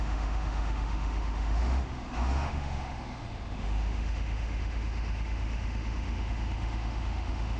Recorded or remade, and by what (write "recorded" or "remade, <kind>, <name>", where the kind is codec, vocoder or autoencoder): remade, autoencoder, DAC-VAE